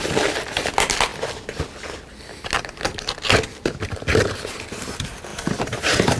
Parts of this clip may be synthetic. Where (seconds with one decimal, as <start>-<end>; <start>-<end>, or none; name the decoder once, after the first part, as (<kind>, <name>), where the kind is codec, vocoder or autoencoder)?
none